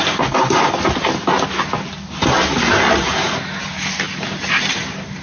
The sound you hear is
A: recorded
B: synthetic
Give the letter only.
A